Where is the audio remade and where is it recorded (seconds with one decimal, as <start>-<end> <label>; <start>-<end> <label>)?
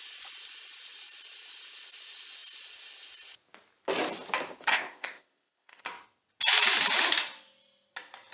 0.0-4.7 recorded; 4.7-5.8 remade; 5.8-8.3 recorded